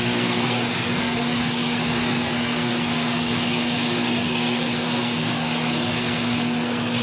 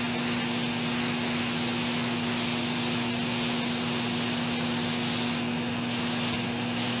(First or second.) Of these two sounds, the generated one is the first